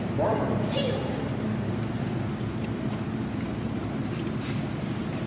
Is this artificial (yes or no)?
yes